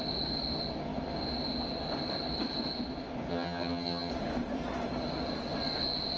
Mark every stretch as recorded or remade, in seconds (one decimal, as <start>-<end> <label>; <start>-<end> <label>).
0.0-3.3 recorded; 3.3-4.1 remade; 4.1-6.2 recorded